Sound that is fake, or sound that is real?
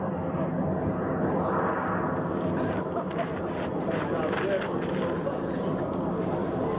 real